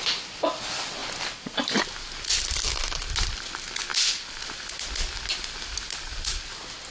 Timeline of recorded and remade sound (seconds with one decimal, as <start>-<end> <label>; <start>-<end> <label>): 0.0-6.9 recorded

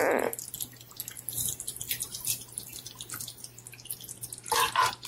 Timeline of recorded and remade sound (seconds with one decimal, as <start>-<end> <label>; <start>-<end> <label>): 0.0-5.1 recorded

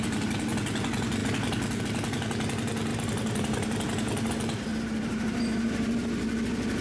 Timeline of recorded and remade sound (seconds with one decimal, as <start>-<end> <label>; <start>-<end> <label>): 0.0-2.9 recorded; 2.9-4.3 remade; 4.3-4.7 recorded; 4.7-6.1 remade; 6.1-6.8 recorded

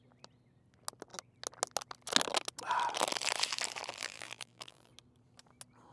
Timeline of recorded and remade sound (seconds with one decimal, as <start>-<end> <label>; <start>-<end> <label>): 0.0-4.0 recorded; 4.0-4.9 remade; 4.9-5.9 recorded

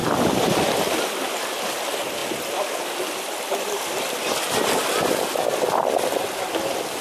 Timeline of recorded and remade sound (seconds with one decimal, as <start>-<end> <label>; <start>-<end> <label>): 0.0-0.8 remade; 0.8-7.0 recorded

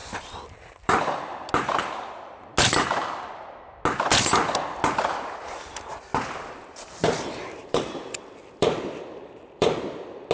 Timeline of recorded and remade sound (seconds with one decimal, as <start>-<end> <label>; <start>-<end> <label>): 0.0-1.0 remade; 1.0-7.6 recorded; 7.6-10.3 remade

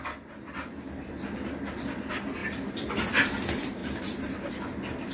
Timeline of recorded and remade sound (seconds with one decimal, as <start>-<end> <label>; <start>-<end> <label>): 0.0-2.4 recorded; 2.4-2.9 remade; 2.9-5.1 recorded

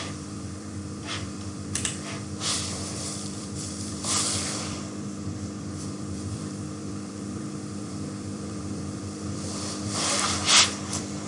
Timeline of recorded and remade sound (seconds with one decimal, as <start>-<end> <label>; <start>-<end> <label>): 0.0-10.4 remade; 10.4-10.9 recorded; 10.9-11.3 remade